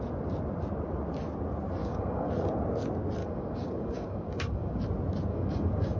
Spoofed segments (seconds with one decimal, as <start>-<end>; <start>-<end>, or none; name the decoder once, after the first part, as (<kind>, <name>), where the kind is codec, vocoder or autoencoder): 1.8-2.3 (codec, DAC); 3.2-4.8; 5.3-6.0